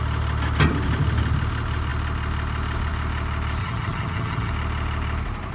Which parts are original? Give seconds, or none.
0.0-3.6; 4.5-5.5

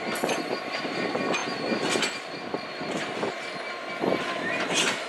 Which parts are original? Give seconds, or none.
0.0-5.1

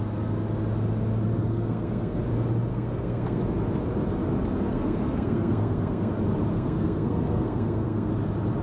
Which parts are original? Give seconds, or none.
0.0-1.4; 2.2-2.7; 3.4-4.7; 6.1-6.5; 8.1-8.6

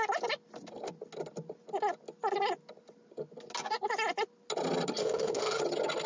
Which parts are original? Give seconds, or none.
0.0-5.0; 5.6-6.1

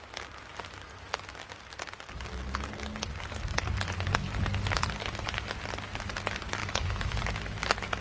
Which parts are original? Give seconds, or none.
0.0-6.6; 7.2-8.0

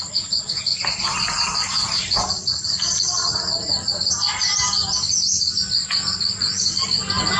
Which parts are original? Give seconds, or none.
0.0-0.7; 5.1-7.4

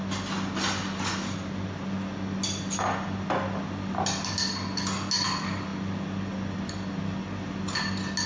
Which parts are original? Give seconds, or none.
0.0-8.3

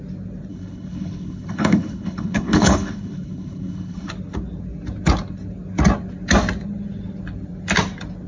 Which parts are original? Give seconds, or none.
0.0-0.5; 4.1-8.3